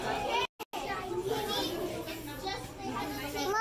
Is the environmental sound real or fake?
real